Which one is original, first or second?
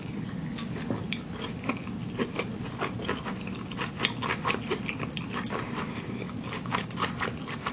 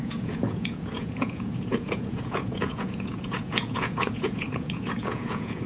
first